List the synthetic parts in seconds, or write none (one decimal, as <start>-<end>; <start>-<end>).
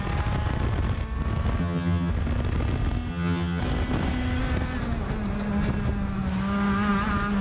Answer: 1.6-2.1; 3.1-3.6